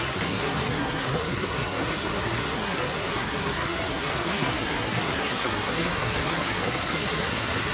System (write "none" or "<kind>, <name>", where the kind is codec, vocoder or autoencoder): codec, SNAC